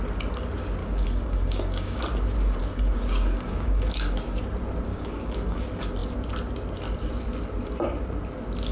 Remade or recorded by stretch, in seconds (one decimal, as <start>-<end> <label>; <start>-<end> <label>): 0.0-0.8 recorded; 0.8-2.0 remade; 2.0-2.6 recorded; 2.6-4.4 remade; 4.4-4.9 recorded; 4.9-5.6 remade; 5.6-8.7 recorded